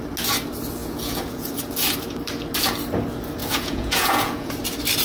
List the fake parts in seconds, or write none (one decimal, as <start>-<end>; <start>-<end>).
0.8-1.5; 3.4-4.5